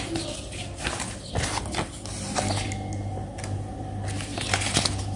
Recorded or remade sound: recorded